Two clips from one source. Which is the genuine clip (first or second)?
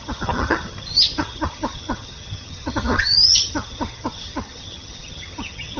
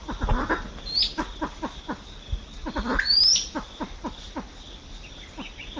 second